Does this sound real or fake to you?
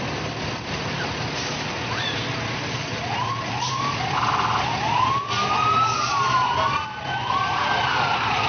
real